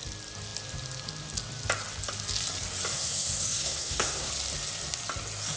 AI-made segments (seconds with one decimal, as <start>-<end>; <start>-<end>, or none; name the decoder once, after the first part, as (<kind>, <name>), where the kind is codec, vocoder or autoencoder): 2.9-4.3 (codec, SNAC)

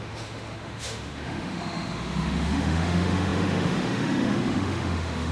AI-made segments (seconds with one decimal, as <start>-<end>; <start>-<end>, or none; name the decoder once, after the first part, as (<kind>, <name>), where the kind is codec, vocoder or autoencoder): 0.0-5.3 (autoencoder, DAC-VAE)

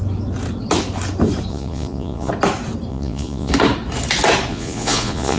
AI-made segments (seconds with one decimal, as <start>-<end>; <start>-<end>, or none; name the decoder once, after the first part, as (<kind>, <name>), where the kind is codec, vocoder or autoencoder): 1.5-2.3 (vocoder, Vocos); 2.9-3.5; 4.5-5.4

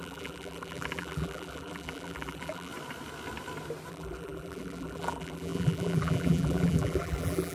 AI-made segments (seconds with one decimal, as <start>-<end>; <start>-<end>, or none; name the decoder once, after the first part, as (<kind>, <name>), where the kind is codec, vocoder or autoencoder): 0.0-2.7 (vocoder, BigVGAN v2); 3.9-7.5

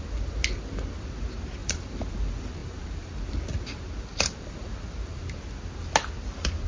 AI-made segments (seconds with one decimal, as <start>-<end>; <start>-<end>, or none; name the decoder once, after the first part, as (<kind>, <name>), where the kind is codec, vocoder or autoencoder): 1.6-2.1 (vocoder, BigVGAN v2); 2.6-3.1; 4.1-5.4

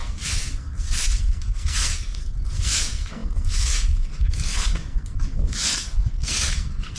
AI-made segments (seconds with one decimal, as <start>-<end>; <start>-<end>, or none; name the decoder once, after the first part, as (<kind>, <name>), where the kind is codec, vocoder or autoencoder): 0.0-7.0 (codec, SNAC)